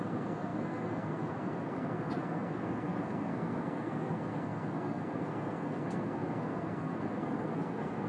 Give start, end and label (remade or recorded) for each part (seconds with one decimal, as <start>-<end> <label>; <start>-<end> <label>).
0.0-8.1 remade